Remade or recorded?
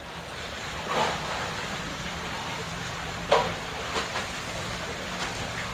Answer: recorded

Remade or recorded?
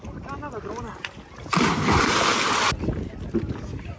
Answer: recorded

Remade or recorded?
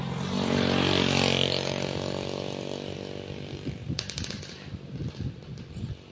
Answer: recorded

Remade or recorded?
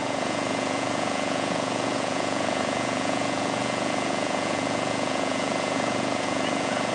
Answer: remade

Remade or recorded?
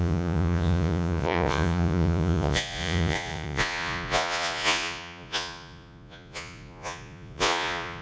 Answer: remade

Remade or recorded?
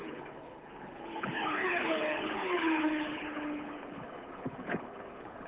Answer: remade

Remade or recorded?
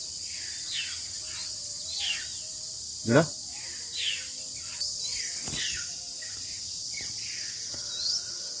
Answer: recorded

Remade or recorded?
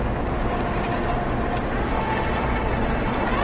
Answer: recorded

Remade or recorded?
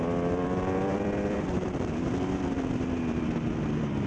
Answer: remade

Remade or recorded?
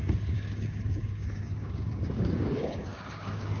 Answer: remade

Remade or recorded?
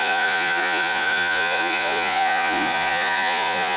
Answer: remade